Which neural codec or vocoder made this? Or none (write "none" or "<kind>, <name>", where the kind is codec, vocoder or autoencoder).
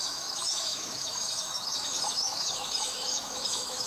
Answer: autoencoder, DAC-VAE